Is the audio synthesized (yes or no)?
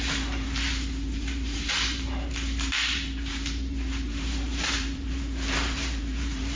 yes